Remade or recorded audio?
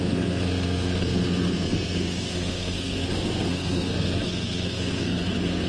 remade